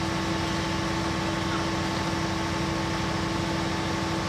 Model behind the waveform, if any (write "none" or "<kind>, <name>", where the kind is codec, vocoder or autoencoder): none